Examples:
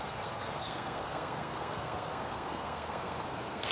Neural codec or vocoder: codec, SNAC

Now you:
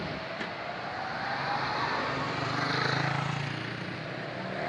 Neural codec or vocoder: none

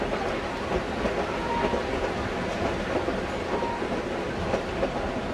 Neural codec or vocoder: none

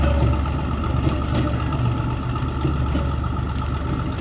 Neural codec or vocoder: none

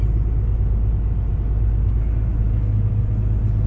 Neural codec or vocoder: none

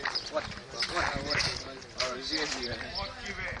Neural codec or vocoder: vocoder, BigVGAN v2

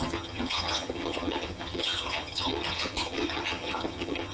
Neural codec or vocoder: vocoder, HiFi-GAN